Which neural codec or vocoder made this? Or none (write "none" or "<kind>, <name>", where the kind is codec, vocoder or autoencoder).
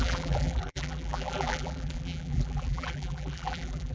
vocoder, BigVGAN v2